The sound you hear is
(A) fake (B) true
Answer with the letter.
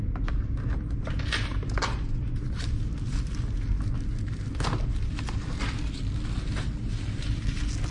B